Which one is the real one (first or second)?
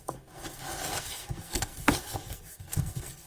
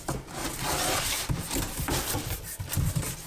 second